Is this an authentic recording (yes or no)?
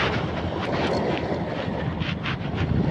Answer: yes